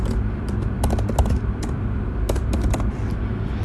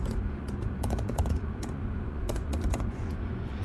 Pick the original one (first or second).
first